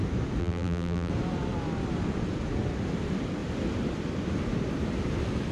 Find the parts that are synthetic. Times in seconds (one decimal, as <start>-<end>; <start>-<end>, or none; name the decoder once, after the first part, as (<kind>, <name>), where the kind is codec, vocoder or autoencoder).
0.4-1.1 (vocoder, BigVGAN v2)